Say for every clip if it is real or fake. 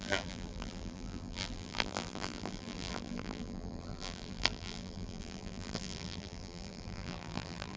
fake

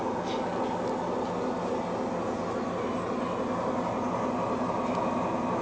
real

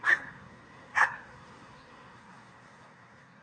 fake